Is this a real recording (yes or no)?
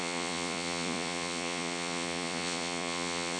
no